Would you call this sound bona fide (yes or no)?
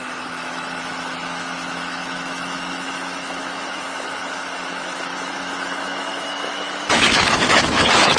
no